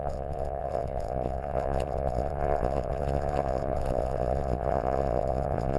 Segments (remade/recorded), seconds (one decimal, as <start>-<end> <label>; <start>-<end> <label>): 0.0-5.8 remade